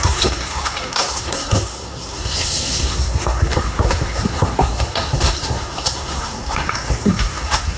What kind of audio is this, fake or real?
fake